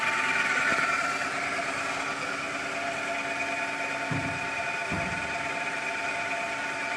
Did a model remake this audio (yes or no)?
no